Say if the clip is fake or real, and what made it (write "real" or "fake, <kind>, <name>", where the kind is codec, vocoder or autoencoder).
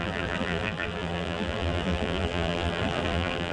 fake, vocoder, BigVGAN v2